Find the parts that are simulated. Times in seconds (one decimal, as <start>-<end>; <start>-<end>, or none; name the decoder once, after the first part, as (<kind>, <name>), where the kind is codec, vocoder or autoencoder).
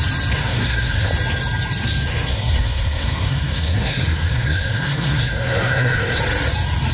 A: 0.4-1.1 (codec, SNAC); 2.3-6.2